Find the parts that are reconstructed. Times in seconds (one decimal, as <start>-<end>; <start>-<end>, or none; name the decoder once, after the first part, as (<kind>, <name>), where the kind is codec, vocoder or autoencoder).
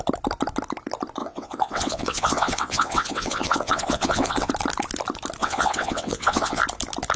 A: 1.2-4.5 (vocoder, WaveNeXt); 5.4-6.6